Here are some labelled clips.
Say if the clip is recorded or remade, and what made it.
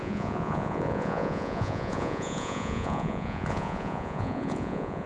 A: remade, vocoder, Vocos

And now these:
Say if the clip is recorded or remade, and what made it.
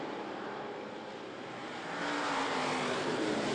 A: remade, vocoder, BigVGAN v2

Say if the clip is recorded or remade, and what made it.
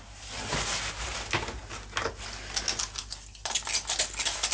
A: recorded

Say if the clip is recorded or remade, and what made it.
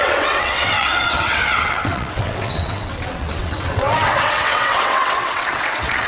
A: remade, vocoder, WaveNeXt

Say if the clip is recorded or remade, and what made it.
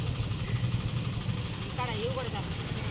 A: recorded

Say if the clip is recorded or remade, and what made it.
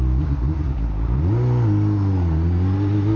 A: recorded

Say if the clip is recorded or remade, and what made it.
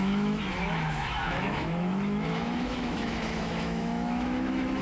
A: remade, autoencoder, DAC-VAE